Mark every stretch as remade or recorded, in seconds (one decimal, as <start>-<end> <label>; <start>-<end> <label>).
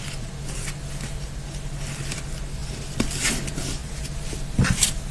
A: 0.0-5.1 recorded